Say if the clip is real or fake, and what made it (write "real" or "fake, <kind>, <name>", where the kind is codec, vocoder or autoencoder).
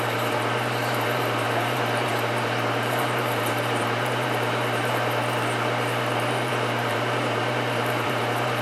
fake, vocoder, BigVGAN v2